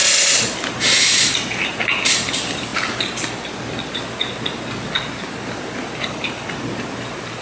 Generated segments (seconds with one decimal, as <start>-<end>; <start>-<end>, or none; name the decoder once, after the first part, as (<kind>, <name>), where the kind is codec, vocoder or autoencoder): none